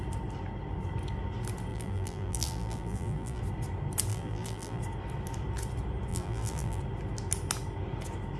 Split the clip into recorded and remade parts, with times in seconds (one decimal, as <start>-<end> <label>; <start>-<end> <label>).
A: 0.0-1.7 recorded; 1.7-3.4 remade; 3.4-4.1 recorded; 4.1-4.8 remade; 4.8-6.1 recorded; 6.1-6.8 remade; 6.8-8.4 recorded